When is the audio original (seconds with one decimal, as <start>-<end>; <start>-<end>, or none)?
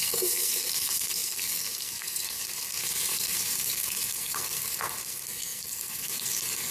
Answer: none